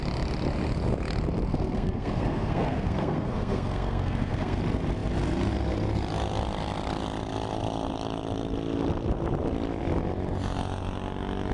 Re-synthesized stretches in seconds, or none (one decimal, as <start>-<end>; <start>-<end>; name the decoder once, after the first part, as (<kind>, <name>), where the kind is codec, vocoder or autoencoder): 1.5-4.6 (codec, SNAC)